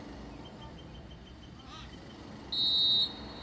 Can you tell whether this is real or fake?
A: real